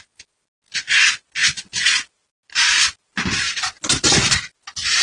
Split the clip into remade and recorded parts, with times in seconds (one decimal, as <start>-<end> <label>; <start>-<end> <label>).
0.0-5.0 recorded